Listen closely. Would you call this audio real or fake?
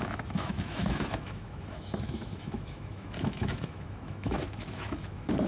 fake